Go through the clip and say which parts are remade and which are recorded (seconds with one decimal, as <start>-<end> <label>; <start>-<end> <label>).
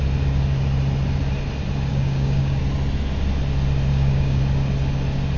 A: 0.0-1.9 recorded; 1.9-2.6 remade; 2.6-3.9 recorded; 3.9-4.4 remade; 4.4-5.4 recorded